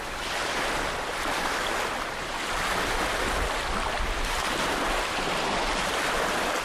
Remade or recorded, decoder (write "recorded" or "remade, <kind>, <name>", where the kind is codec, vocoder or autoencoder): recorded